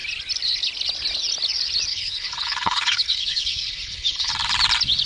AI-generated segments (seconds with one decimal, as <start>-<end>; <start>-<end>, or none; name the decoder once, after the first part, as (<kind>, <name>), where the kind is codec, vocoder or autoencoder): 1.9-4.3 (codec, HILCodec)